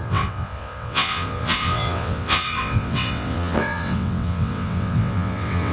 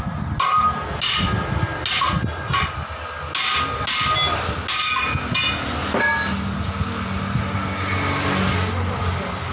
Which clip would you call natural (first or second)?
second